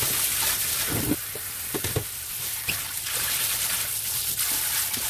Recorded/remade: recorded